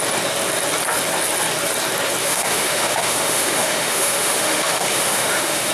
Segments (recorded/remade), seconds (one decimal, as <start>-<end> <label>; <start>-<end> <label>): 0.0-2.2 recorded; 2.2-5.7 remade